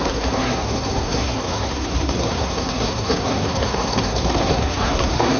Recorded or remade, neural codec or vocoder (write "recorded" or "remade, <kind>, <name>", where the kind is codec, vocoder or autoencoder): remade, codec, SNAC